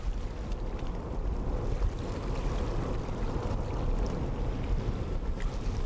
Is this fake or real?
real